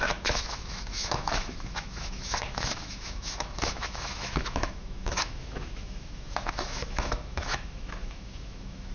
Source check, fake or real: fake